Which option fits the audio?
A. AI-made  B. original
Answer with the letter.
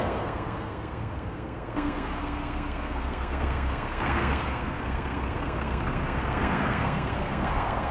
A